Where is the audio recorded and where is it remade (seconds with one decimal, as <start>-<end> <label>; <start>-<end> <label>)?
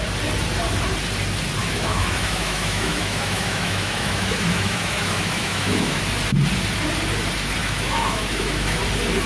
0.0-1.6 recorded; 1.6-6.0 remade; 6.0-7.6 recorded; 7.6-8.8 remade; 8.8-9.3 recorded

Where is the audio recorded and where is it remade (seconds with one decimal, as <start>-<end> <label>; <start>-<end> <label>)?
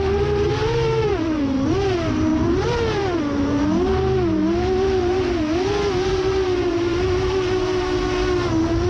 0.0-8.9 recorded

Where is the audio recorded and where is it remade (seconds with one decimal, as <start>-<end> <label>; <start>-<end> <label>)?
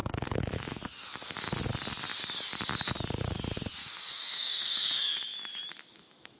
0.0-0.8 remade; 0.8-3.8 recorded; 3.8-6.4 remade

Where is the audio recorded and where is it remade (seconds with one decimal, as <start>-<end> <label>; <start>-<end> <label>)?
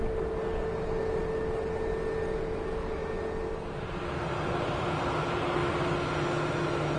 0.0-7.0 recorded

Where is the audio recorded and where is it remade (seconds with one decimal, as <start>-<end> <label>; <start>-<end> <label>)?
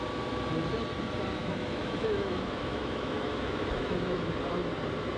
0.0-1.4 recorded; 1.4-4.3 remade; 4.3-5.2 recorded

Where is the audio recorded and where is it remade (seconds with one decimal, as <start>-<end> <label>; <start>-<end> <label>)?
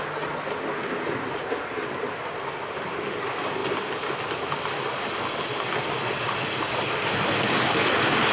0.0-8.3 recorded